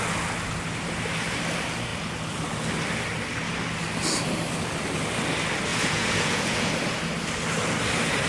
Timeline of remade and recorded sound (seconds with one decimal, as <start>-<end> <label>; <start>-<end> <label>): 0.0-5.7 recorded; 5.7-7.0 remade; 7.0-8.3 recorded